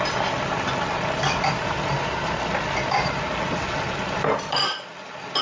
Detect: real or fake real